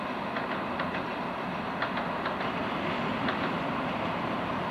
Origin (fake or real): real